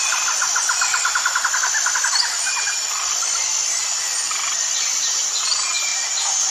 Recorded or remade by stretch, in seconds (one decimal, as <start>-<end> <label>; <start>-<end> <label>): 0.0-6.5 recorded